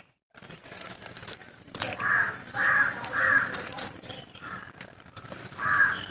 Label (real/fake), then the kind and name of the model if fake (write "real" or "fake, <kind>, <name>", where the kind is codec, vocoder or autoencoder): fake, vocoder, BigVGAN v2